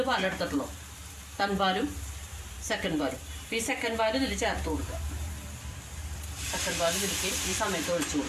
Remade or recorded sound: remade